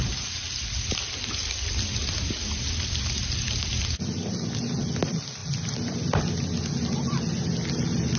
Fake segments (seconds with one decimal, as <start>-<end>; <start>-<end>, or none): none